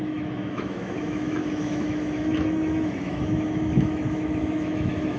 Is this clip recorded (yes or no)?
no